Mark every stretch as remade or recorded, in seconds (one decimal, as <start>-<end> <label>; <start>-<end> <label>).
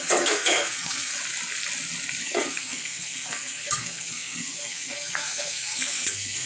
0.0-1.1 remade; 1.1-2.2 recorded; 2.2-6.5 remade